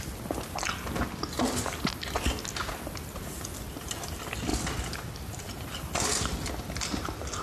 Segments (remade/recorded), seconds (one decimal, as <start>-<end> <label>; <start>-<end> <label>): 0.0-7.4 recorded